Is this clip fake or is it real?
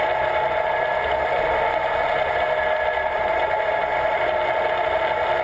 real